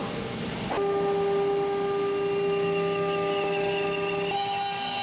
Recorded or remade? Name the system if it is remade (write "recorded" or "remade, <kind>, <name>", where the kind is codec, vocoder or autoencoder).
recorded